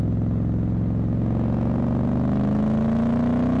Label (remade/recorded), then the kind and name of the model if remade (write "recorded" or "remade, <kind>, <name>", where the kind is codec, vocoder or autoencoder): recorded